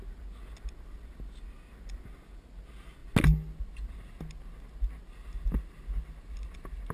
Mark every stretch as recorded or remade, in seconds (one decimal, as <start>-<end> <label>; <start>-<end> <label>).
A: 0.0-6.9 recorded